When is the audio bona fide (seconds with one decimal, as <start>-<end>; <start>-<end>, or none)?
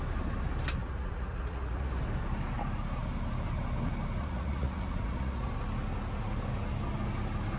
0.0-0.8; 2.0-4.2; 5.5-7.6